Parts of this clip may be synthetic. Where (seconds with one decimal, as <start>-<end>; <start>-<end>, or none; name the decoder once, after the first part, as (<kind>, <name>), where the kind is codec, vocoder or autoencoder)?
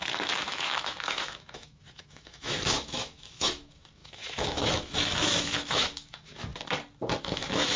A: 0.0-6.5 (autoencoder, DAC-VAE); 7.2-7.8